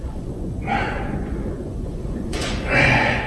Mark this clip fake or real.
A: fake